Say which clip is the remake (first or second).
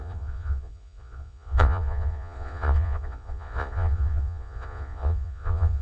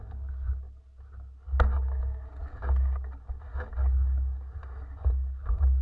first